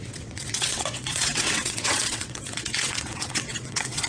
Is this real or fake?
fake